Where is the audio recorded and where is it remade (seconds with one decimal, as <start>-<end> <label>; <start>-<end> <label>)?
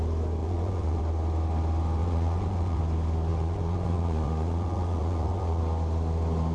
0.0-0.4 recorded; 0.4-1.0 remade; 1.0-2.0 recorded; 2.0-2.8 remade; 2.8-3.3 recorded; 3.3-5.6 remade; 5.6-6.5 recorded